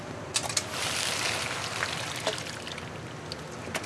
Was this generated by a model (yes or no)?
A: no